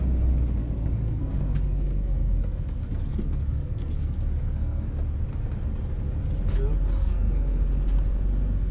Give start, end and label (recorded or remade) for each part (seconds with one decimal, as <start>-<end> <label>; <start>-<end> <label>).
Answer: 0.0-0.6 recorded; 0.6-4.9 remade; 4.9-7.0 recorded; 7.0-7.6 remade; 7.6-8.7 recorded